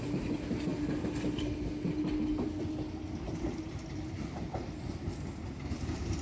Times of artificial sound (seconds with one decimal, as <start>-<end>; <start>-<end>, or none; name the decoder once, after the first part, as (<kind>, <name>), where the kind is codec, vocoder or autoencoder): none

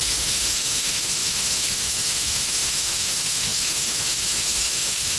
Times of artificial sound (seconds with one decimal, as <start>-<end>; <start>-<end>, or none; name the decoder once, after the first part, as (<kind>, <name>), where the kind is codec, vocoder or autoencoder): 0.0-5.2 (autoencoder, DAC-VAE)